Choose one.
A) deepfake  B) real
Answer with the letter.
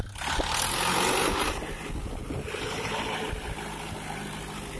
B